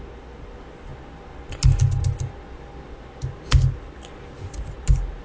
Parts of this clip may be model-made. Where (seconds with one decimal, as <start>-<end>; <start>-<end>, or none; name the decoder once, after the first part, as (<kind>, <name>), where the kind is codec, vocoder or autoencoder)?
none